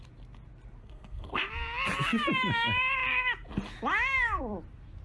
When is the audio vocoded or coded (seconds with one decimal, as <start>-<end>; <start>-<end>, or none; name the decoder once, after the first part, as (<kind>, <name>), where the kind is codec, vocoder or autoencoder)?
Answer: 0.8-1.5 (codec, SNAC)

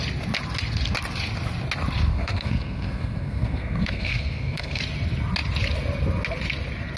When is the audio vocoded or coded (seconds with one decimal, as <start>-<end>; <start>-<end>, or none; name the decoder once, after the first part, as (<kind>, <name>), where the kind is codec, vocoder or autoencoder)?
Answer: 2.1-4.8 (codec, SNAC)

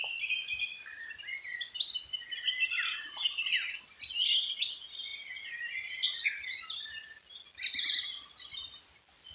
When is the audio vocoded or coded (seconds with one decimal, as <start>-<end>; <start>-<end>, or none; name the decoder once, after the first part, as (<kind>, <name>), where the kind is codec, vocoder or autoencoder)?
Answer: none

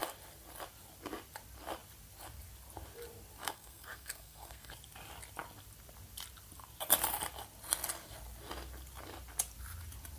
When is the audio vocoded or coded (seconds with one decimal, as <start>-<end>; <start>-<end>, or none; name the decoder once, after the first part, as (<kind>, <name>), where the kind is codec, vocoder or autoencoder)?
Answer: 3.4-4.7 (codec, SNAC)

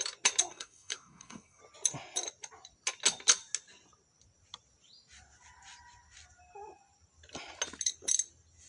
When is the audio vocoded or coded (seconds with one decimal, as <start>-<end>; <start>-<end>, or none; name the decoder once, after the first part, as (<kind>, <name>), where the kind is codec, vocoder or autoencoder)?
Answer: 0.5-1.6 (codec, SNAC)

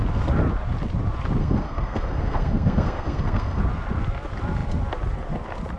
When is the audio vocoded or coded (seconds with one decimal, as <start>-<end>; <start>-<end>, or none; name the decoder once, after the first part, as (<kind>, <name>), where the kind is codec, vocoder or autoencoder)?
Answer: 1.4-3.6 (codec, SNAC)